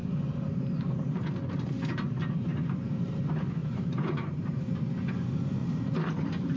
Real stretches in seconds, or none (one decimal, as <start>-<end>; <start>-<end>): 1.3-2.5; 3.2-3.6; 4.6-5.6